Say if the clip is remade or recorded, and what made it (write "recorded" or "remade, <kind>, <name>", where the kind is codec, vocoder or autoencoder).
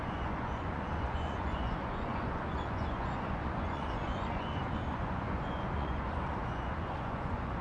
remade, vocoder, Vocos